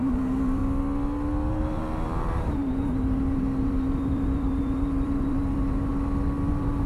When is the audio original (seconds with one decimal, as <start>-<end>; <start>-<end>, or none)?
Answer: 0.6-1.5; 5.9-6.5